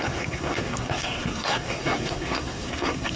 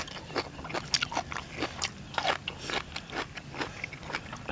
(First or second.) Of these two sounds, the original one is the second